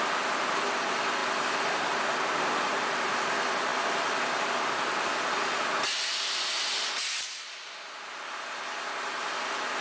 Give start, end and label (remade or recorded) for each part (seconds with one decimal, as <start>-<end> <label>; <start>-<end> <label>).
0.0-9.8 recorded